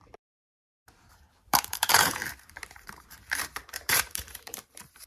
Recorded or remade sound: remade